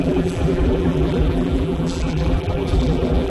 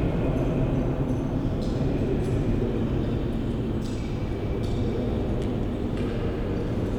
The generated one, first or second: first